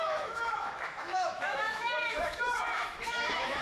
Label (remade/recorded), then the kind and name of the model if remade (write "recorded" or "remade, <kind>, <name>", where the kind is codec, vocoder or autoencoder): remade, autoencoder, DAC-VAE